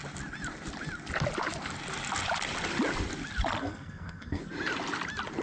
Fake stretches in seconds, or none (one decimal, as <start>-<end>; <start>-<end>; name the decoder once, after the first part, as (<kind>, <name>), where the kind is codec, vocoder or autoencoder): 3.6-4.4 (codec, SNAC)